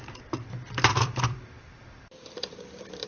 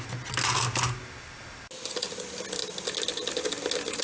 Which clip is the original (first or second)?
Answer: second